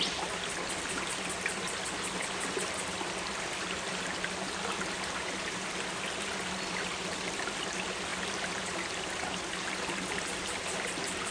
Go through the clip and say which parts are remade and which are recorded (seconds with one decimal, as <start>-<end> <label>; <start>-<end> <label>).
0.0-11.3 recorded